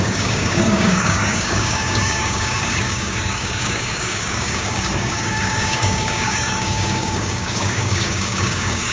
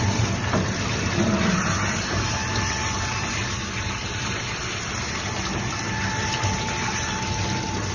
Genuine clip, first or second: second